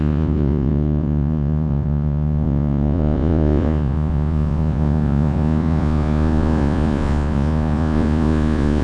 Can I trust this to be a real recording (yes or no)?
no